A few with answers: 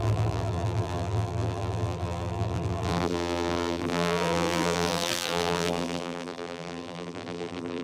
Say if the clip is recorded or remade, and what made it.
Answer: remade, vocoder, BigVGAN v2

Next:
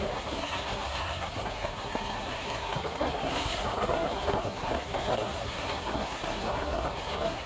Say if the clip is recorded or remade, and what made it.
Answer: remade, codec, SNAC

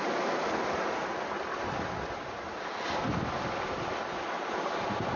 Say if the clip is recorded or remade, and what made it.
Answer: recorded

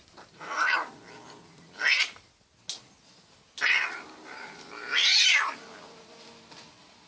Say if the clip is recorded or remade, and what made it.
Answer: recorded